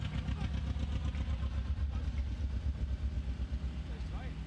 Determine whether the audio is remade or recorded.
recorded